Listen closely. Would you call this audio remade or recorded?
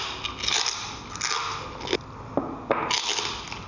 recorded